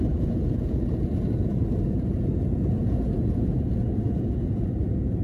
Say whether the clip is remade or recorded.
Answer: remade